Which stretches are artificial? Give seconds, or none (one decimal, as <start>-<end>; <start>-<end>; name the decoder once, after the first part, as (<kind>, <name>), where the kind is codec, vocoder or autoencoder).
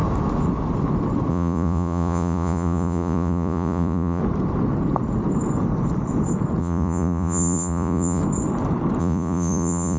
1.3-4.2 (vocoder, Vocos); 6.6-8.2; 9.0-10.0